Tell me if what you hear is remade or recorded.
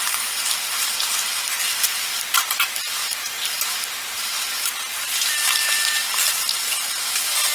remade